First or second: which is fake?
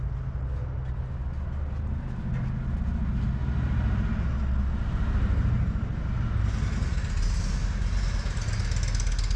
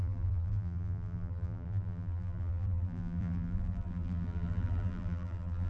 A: second